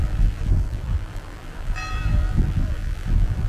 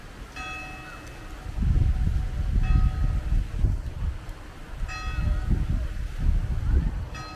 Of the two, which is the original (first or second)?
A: second